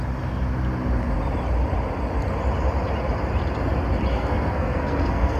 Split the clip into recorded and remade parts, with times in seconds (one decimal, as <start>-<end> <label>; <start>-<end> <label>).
0.0-4.1 recorded; 4.1-5.4 remade